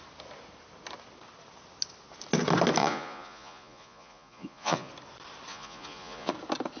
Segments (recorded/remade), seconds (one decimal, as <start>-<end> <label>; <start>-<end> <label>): 0.0-2.8 recorded; 2.8-4.9 remade; 4.9-5.5 recorded; 5.5-6.3 remade; 6.3-6.8 recorded